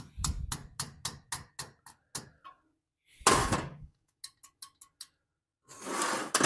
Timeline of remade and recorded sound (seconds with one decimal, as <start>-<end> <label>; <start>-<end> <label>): 0.0-3.4 recorded; 3.4-4.2 remade; 4.2-6.5 recorded